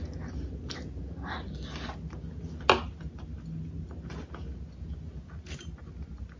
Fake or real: real